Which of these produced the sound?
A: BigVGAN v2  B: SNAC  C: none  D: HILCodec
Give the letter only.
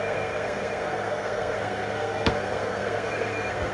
B